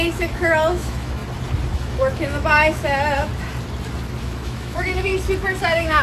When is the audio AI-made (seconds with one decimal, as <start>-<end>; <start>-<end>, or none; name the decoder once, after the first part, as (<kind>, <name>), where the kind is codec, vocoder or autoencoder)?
0.0-1.2 (autoencoder, DAC-VAE); 1.7-3.3; 4.2-5.1; 5.6-6.0

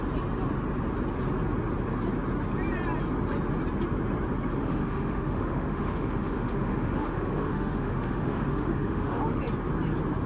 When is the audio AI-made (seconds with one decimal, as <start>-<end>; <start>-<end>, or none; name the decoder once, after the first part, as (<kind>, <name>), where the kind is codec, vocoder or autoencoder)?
4.6-9.4 (autoencoder, DAC-VAE)

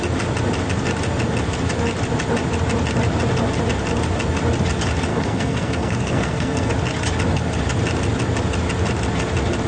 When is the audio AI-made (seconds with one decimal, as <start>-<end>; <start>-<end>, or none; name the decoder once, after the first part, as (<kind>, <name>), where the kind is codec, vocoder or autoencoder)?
5.1-6.7 (codec, SNAC)

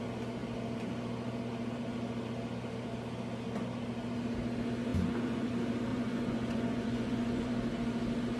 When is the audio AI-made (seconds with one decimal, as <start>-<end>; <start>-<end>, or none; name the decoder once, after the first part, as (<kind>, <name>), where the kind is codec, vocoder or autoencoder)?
4.9-5.5 (vocoder, Vocos); 5.9-7.5

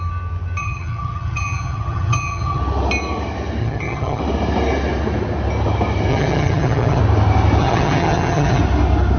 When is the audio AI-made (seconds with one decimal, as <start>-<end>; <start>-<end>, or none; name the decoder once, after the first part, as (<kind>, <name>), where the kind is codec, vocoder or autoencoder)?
0.6-2.6 (vocoder, HiFi-GAN); 3.6-4.2; 6.1-7.0; 7.6-8.6

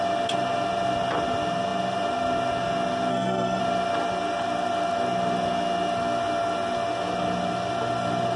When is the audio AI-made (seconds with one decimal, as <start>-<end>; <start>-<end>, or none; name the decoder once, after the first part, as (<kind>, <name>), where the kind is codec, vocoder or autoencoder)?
3.1-3.6 (codec, SNAC)

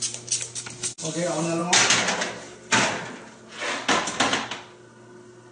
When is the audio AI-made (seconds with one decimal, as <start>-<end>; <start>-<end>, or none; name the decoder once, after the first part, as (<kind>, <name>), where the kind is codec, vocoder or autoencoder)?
none

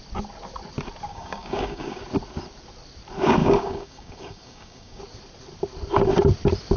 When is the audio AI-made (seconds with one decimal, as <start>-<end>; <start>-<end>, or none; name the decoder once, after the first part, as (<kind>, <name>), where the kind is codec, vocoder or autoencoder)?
1.1-2.0 (codec, DAC); 3.4-5.0